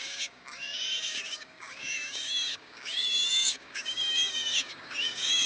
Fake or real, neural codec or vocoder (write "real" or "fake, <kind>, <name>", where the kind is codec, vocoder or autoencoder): fake, codec, DAC